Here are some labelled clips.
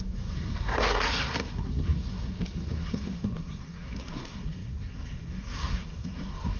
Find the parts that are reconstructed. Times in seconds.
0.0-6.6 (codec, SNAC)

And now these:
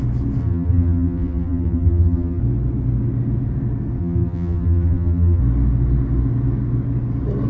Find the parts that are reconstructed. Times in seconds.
0.4-2.4 (vocoder, BigVGAN v2); 4.0-5.4